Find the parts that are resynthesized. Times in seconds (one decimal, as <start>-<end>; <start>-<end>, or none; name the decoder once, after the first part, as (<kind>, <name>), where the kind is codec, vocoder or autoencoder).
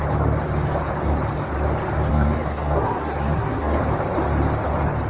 2.1-3.8 (codec, SNAC)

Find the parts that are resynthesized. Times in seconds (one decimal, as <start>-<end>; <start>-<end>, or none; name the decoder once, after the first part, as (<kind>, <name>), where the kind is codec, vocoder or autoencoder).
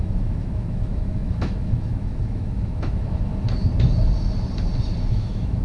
0.0-3.3 (autoencoder, DAC-VAE); 5.1-5.6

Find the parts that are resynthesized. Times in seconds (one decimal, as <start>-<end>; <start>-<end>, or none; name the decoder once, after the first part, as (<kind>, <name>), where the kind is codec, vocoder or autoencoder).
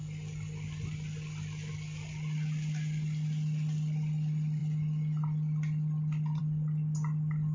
none